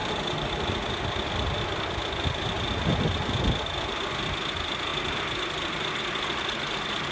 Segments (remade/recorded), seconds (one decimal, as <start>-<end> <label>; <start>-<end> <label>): 0.0-7.1 recorded

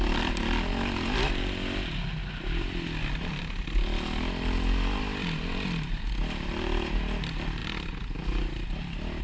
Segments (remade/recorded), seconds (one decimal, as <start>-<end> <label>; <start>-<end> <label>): 0.0-9.2 recorded

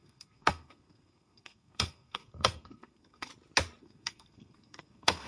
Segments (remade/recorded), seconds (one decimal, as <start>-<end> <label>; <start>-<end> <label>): 0.0-3.3 remade; 3.3-3.8 recorded; 3.8-5.3 remade

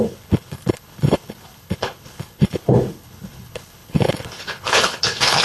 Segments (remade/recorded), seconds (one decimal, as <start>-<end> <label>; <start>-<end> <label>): 0.0-5.4 remade

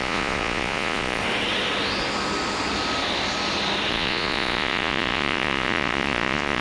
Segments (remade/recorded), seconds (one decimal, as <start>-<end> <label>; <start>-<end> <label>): 0.0-1.2 remade; 1.2-3.9 recorded; 3.9-6.6 remade

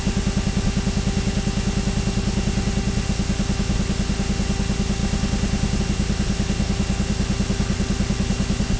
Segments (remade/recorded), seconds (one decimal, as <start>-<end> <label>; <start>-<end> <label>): 0.0-8.8 recorded